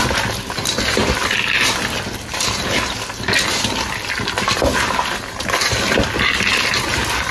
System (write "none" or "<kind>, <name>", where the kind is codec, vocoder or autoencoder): none